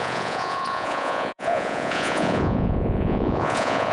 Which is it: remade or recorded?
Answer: remade